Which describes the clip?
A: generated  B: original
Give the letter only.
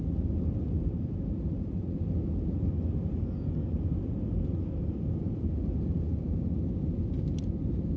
B